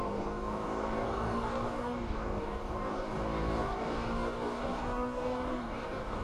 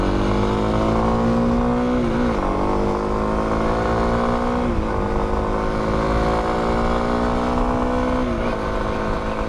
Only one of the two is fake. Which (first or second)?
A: first